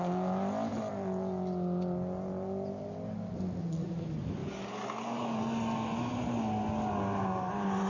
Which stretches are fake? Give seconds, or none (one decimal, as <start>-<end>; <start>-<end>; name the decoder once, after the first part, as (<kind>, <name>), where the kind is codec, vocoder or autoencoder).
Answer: none